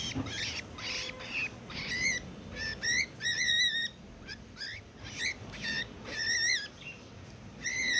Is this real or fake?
real